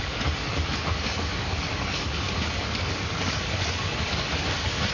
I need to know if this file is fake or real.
fake